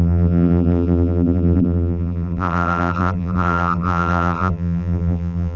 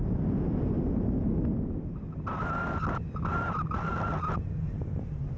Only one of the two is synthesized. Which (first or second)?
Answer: first